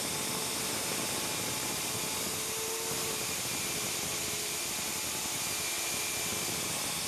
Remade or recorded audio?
recorded